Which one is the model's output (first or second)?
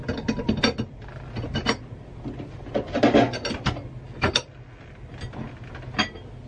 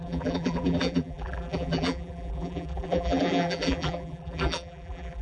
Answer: second